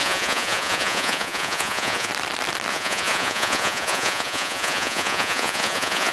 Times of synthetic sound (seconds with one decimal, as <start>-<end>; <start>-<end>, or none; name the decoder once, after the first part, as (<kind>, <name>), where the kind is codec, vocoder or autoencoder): 0.0-2.1 (vocoder, Vocos); 2.7-6.1